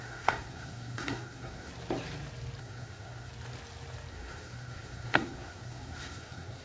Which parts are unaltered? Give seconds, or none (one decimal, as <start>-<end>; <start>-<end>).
1.7-2.6; 3.3-4.1